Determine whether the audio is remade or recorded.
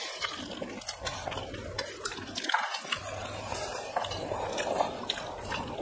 recorded